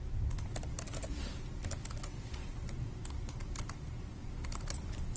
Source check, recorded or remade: recorded